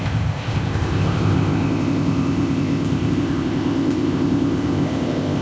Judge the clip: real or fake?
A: fake